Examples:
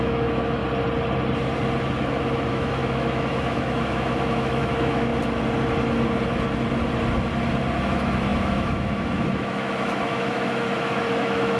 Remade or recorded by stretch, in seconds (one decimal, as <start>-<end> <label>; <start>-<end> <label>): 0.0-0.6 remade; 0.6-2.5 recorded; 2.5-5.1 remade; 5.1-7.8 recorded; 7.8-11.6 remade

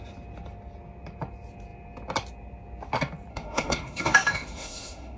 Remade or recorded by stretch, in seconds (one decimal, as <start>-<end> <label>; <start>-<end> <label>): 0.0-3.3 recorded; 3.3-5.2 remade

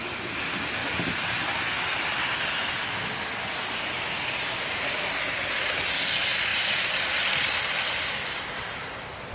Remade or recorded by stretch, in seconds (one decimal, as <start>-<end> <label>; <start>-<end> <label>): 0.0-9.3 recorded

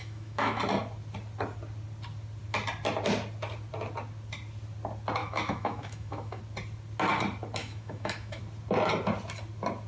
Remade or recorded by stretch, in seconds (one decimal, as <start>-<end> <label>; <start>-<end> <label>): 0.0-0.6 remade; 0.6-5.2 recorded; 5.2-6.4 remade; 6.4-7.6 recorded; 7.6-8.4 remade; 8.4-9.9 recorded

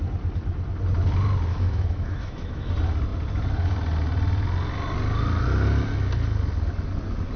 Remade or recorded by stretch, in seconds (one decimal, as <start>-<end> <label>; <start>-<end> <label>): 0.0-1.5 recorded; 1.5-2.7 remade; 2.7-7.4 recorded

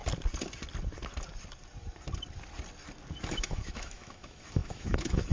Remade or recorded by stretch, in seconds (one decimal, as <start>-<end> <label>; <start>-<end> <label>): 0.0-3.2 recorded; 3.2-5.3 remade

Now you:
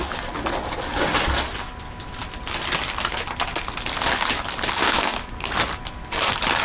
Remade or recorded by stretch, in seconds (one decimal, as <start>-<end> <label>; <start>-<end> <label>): 0.0-4.8 recorded; 4.8-5.3 remade; 5.3-6.6 recorded

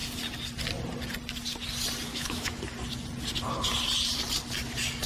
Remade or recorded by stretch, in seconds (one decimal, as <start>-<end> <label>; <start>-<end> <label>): 0.0-2.1 recorded; 2.1-2.6 remade; 2.6-5.1 recorded